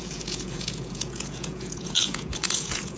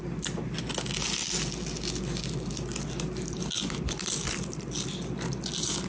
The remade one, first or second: first